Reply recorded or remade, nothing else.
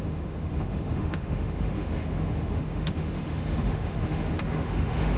remade